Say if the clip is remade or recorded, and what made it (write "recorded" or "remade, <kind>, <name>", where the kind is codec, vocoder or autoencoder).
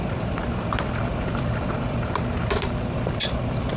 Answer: recorded